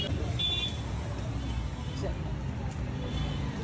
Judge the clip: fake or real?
real